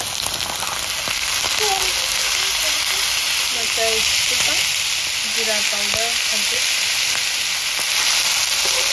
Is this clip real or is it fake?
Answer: real